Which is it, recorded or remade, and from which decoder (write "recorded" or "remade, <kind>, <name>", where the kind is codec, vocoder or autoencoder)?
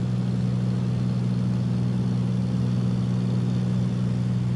recorded